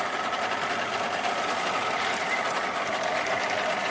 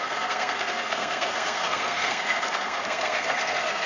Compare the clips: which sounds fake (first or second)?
second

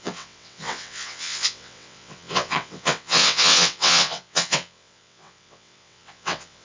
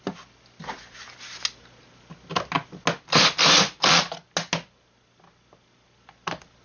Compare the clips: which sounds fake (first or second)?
first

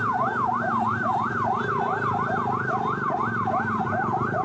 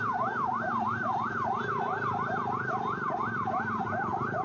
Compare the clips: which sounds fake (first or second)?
second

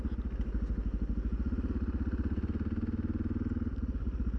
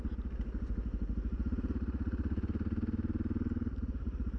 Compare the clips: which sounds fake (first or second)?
second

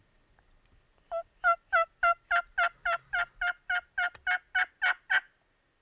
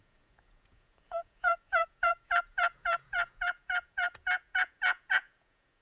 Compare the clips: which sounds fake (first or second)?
second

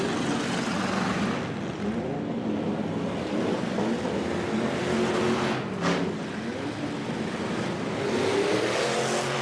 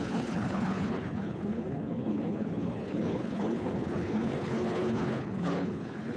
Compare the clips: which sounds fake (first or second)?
second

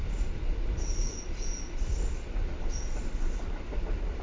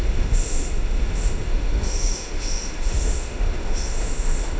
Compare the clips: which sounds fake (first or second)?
second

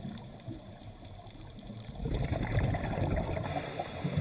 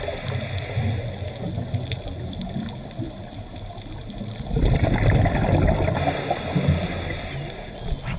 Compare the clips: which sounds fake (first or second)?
first